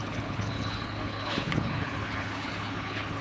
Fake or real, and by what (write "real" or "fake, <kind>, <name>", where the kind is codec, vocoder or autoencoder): fake, codec, HILCodec